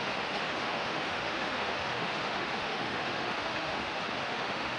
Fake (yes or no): yes